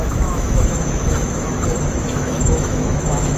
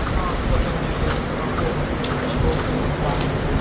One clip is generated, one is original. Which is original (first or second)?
second